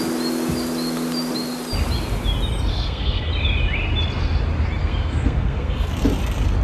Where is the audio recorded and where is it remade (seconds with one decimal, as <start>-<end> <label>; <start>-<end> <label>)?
0.0-2.7 recorded; 2.7-3.3 remade; 3.3-4.8 recorded; 4.8-5.9 remade; 5.9-6.6 recorded